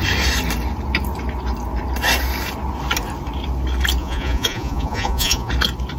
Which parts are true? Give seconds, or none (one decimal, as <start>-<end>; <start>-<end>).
0.0-4.0; 5.5-6.0